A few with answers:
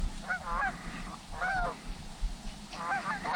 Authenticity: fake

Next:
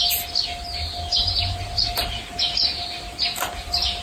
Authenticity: real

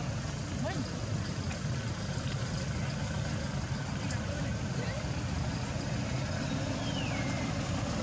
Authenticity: real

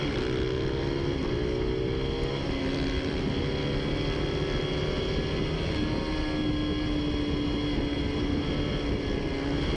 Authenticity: real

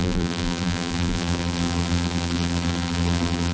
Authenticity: fake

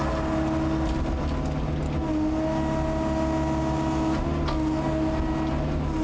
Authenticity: real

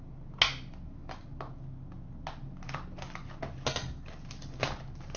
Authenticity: real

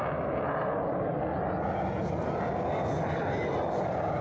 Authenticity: real